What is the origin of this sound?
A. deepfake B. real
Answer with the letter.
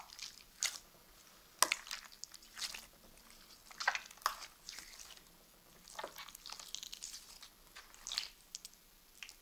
B